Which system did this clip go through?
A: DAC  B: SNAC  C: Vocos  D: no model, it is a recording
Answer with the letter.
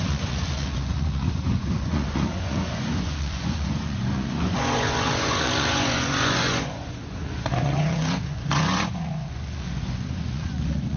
C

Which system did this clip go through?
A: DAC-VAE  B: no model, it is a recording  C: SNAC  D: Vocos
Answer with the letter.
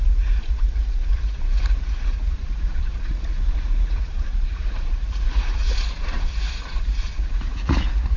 D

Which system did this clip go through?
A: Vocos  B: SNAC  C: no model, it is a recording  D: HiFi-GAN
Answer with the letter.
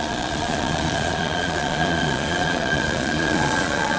A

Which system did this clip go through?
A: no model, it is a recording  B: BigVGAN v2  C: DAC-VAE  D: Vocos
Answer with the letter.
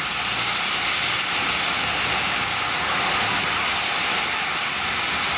A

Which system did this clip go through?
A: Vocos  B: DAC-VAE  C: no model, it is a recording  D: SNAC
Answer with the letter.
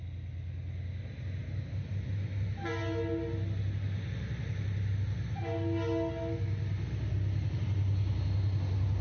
C